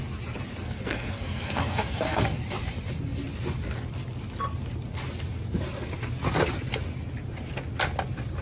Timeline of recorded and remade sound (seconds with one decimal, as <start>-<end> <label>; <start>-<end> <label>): 0.0-0.6 recorded; 0.6-2.4 remade; 2.4-8.4 recorded